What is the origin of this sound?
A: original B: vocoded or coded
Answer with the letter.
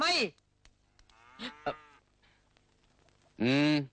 A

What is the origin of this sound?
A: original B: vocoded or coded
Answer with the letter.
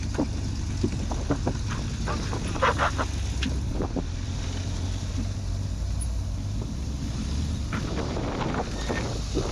A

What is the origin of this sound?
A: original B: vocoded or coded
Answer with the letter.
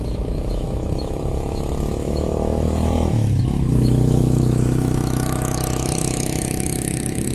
B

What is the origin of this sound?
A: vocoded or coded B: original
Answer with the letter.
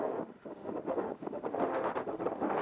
A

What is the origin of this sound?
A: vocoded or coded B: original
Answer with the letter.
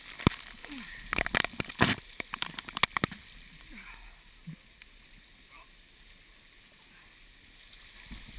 B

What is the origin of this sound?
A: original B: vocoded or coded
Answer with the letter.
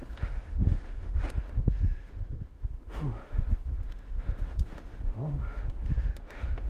B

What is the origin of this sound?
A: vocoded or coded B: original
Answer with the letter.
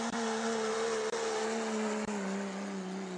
B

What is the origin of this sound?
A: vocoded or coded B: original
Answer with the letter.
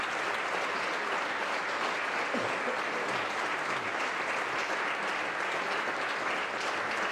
B